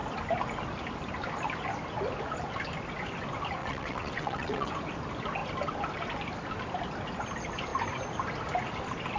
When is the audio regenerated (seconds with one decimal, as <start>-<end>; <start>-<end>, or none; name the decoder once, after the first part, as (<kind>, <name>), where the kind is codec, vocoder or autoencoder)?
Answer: 3.6-4.7 (vocoder, WaveNeXt)